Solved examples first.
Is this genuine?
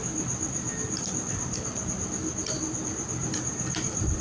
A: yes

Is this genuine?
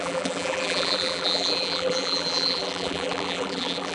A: no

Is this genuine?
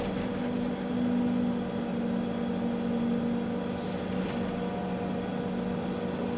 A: yes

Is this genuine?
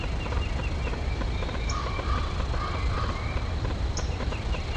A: no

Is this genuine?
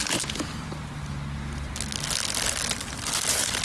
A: yes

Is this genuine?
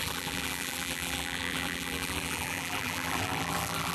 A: no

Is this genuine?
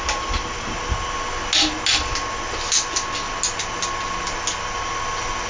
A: yes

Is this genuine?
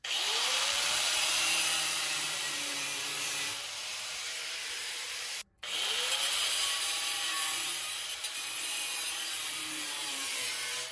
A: no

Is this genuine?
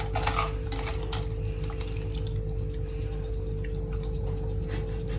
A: yes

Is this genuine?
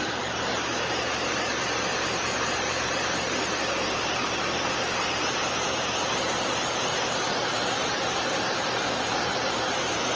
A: no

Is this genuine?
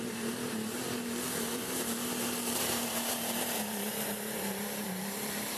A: no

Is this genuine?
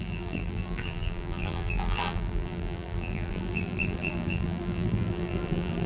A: no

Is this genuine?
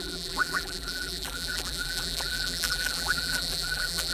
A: no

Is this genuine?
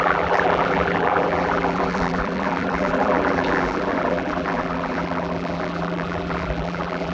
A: no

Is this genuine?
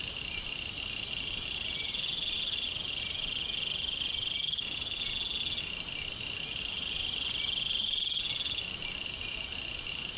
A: yes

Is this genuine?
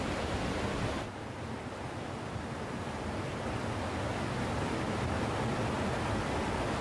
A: no